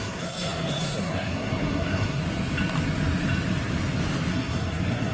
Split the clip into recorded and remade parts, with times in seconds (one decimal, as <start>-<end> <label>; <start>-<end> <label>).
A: 0.0-2.2 remade; 2.2-4.3 recorded; 4.3-5.1 remade